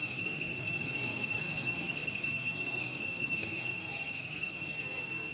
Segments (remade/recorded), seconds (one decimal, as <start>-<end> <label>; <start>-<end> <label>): 0.0-5.3 remade